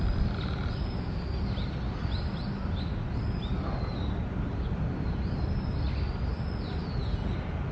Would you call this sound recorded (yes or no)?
yes